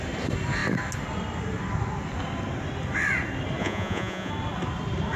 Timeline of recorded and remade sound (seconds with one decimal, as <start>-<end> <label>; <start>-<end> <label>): 0.0-3.6 recorded; 3.6-4.3 remade; 4.3-5.2 recorded